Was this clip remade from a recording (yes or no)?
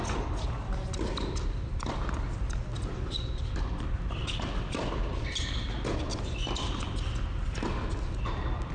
no